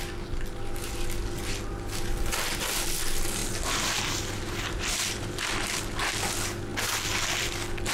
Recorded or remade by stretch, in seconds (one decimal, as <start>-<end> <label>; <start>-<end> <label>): 0.0-3.4 recorded; 3.4-5.7 remade; 5.7-7.9 recorded